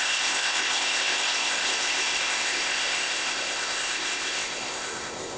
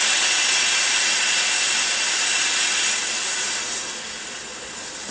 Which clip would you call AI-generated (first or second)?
first